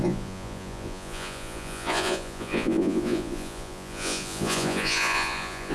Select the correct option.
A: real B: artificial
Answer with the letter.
B